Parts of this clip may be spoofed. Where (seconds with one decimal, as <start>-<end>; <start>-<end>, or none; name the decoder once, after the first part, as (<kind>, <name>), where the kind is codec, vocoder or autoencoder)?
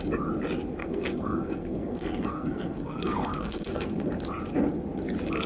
0.8-4.1 (codec, SNAC)